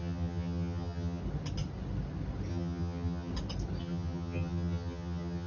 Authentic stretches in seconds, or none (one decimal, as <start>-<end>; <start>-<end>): 1.2-2.5; 3.3-3.8